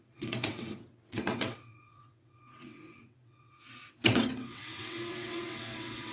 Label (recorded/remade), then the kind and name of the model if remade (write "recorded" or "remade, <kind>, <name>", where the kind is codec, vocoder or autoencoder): remade, vocoder, WaveNeXt